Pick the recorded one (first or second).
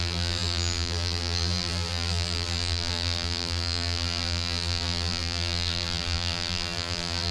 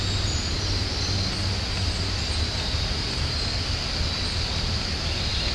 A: second